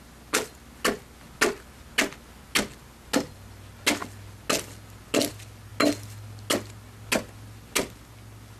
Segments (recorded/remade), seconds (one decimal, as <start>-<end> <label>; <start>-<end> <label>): 0.0-8.6 recorded